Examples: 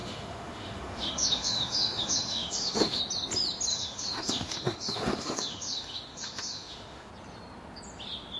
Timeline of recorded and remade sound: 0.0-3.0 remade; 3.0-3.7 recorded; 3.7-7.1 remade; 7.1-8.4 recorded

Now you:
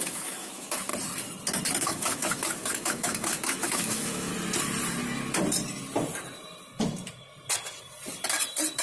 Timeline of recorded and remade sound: 0.0-0.9 remade; 0.9-1.8 recorded; 1.8-4.3 remade; 4.3-8.8 recorded

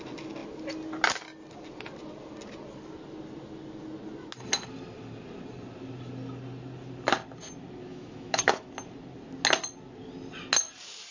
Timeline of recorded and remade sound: 0.0-7.9 recorded; 7.9-8.7 remade; 8.7-11.1 recorded

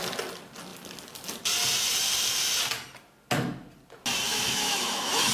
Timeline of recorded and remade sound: 0.0-4.3 recorded; 4.3-5.3 remade

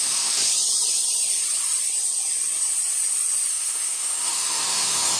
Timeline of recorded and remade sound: 0.0-0.4 remade; 0.4-3.5 recorded; 3.5-5.2 remade

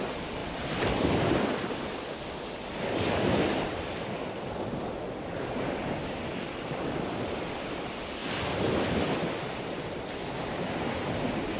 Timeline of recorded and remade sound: 0.0-11.6 recorded

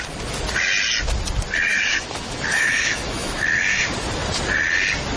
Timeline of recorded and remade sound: 0.0-1.7 recorded; 1.7-3.9 remade; 3.9-5.2 recorded

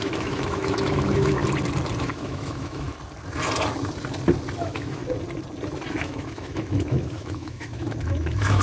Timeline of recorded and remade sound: 0.0-1.4 remade; 1.4-2.0 recorded; 2.0-2.9 remade; 2.9-4.6 recorded; 4.6-5.0 remade; 5.0-6.0 recorded; 6.0-8.6 remade